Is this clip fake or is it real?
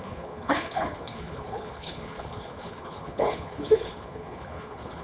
fake